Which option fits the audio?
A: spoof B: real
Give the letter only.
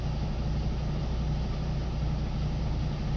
B